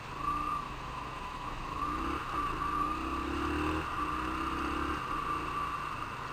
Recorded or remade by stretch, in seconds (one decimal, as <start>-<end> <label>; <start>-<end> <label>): 0.0-0.5 recorded; 0.5-1.8 remade; 1.8-6.3 recorded